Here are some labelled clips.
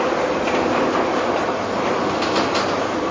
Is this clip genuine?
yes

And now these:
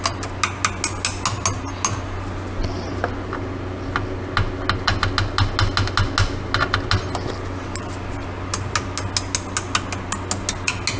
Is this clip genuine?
yes